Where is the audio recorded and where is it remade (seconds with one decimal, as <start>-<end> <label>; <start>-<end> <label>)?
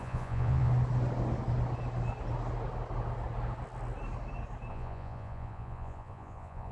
0.0-0.7 remade; 0.7-4.7 recorded; 4.7-6.7 remade